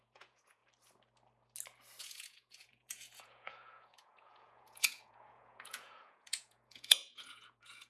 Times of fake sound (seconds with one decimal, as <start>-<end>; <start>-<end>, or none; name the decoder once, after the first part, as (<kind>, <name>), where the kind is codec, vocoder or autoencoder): 0.0-0.6 (vocoder, Vocos); 2.0-7.9